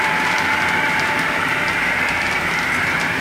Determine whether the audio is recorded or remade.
remade